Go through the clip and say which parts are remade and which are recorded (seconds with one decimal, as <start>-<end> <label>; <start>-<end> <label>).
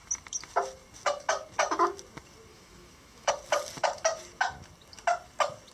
0.0-2.5 recorded; 2.5-3.3 remade; 3.3-5.7 recorded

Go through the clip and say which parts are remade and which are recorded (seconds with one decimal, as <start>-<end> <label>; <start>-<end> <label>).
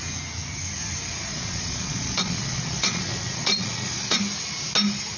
0.0-1.3 recorded; 1.3-4.2 remade; 4.2-5.2 recorded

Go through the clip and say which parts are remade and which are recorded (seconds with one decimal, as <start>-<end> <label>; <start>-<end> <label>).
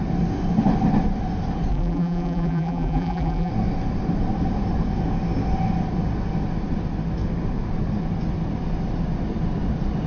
0.0-1.7 recorded; 1.7-3.5 remade; 3.5-10.1 recorded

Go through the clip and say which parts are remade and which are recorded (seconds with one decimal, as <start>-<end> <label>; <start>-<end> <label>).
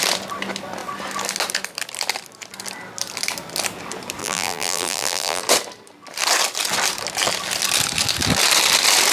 0.0-4.2 recorded; 4.2-5.4 remade; 5.4-9.1 recorded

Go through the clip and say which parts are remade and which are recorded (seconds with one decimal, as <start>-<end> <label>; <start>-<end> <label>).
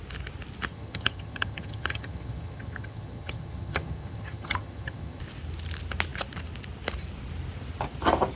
0.0-0.7 recorded; 0.7-5.2 remade; 5.2-8.4 recorded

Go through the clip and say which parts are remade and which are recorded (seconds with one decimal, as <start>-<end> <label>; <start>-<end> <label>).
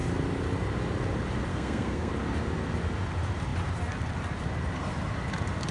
0.0-1.5 recorded; 1.5-2.1 remade; 2.1-5.7 recorded